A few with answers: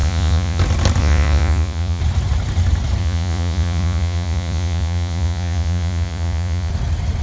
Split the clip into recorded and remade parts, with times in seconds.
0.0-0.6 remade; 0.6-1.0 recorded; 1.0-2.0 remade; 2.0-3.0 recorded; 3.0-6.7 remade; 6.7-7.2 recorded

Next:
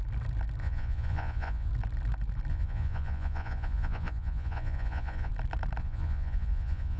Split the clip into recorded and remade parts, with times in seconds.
0.0-0.6 recorded; 0.6-1.7 remade; 1.7-2.5 recorded; 2.5-5.3 remade; 5.3-5.8 recorded; 5.8-7.0 remade

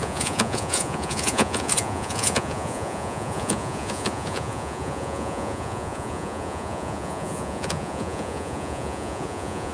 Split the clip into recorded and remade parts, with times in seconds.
0.0-9.7 remade

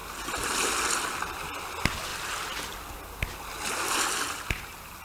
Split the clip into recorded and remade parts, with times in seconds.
0.0-5.0 recorded

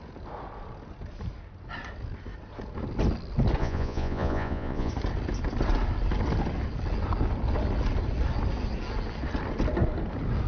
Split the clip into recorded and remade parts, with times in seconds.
0.0-3.6 recorded; 3.6-4.9 remade; 4.9-10.5 recorded

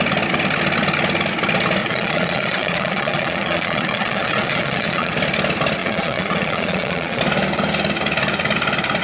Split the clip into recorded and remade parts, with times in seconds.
0.0-1.8 recorded; 1.8-5.1 remade; 5.1-5.8 recorded; 5.8-7.2 remade; 7.2-9.0 recorded

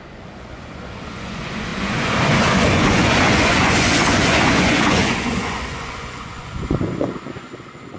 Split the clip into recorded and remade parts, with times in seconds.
0.0-8.0 remade

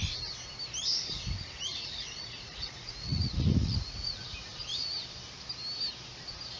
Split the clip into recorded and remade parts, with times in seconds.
0.0-1.7 recorded; 1.7-4.9 remade; 4.9-6.6 recorded